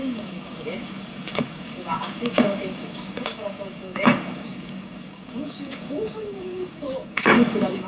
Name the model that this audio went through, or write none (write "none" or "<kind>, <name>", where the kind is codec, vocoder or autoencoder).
codec, DAC